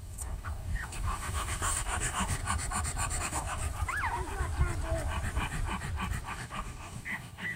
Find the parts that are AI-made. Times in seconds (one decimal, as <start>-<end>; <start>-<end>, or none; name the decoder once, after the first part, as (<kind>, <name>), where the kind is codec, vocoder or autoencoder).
0.0-2.4 (codec, DAC); 3.2-3.6; 6.3-7.6